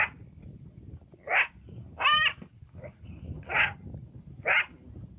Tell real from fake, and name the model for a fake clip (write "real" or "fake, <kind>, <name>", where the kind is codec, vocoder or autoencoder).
real